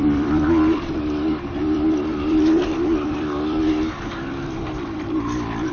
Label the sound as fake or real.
fake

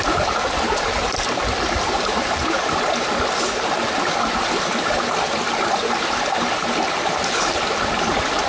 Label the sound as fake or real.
real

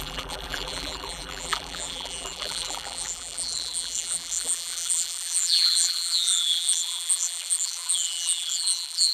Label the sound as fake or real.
fake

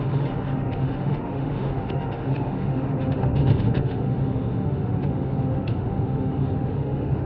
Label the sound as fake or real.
fake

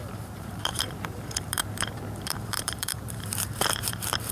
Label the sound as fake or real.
fake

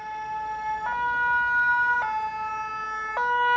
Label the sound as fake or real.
real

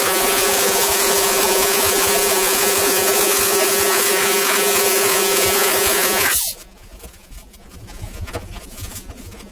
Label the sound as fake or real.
fake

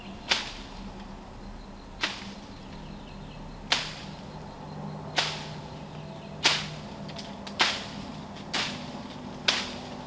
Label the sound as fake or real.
real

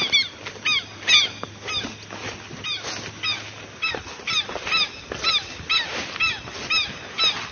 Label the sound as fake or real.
real